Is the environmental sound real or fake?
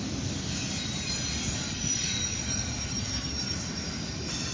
real